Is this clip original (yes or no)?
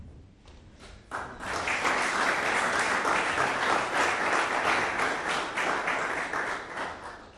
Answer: yes